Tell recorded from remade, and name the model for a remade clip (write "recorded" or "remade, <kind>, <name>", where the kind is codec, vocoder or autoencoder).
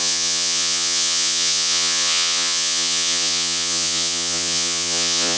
remade, vocoder, Vocos